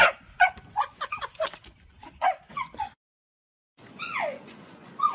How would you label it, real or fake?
fake